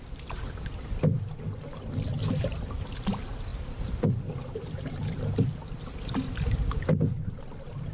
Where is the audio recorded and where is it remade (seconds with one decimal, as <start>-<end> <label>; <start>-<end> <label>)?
0.0-3.5 recorded; 3.5-5.1 remade; 5.1-7.9 recorded